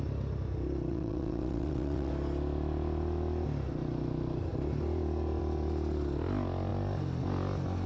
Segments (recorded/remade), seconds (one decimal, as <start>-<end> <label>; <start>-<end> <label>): 0.0-0.9 recorded; 0.9-2.1 remade; 2.1-7.9 recorded